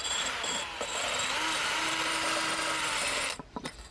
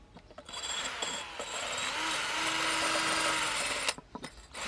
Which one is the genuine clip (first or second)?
second